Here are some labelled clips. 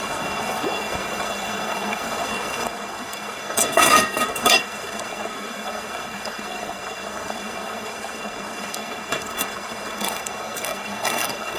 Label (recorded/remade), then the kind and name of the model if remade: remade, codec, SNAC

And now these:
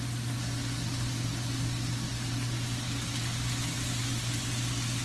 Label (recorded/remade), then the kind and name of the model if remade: recorded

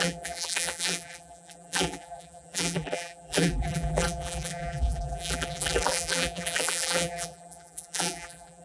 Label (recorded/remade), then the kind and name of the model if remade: remade, vocoder, BigVGAN v2